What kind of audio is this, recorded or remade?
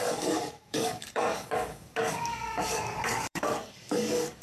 remade